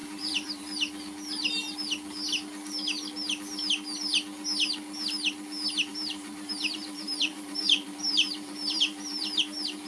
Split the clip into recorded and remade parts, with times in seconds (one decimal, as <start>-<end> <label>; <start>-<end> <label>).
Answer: 0.0-0.6 remade; 0.6-5.9 recorded; 5.9-9.4 remade; 9.4-9.9 recorded